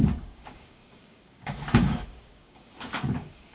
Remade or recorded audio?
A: remade